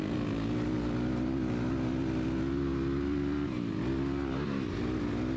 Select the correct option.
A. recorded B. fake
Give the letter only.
A